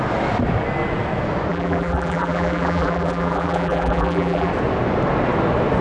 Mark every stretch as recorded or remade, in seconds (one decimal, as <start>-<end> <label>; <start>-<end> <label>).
0.0-1.5 recorded; 1.5-4.5 remade; 4.5-5.8 recorded